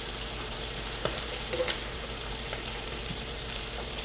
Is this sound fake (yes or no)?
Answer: yes